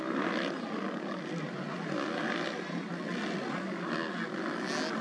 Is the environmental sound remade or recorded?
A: recorded